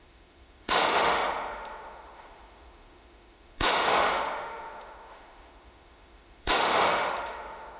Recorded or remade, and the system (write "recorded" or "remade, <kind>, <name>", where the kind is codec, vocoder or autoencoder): remade, autoencoder, DAC-VAE